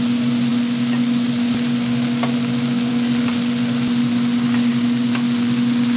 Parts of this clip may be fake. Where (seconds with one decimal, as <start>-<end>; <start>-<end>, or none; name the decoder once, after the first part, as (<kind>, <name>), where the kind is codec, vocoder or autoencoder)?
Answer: none